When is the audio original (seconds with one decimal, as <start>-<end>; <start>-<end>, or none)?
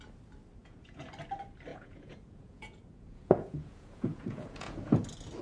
0.0-0.6; 1.1-1.7; 4.9-5.4